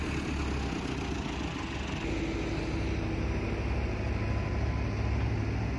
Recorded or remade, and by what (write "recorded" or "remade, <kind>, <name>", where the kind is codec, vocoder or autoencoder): recorded